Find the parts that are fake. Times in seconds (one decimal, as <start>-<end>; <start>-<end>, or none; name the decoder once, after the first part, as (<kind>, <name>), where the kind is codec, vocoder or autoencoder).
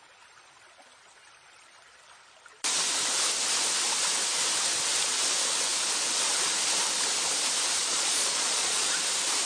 7.8-9.0 (vocoder, Vocos)